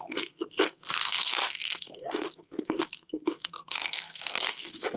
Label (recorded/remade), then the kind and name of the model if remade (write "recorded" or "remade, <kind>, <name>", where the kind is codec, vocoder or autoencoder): remade, codec, SNAC